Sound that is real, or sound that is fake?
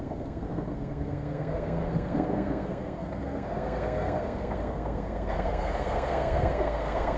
fake